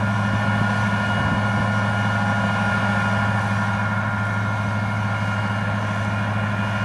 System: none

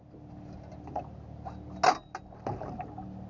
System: none